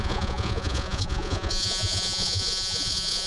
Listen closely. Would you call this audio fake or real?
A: fake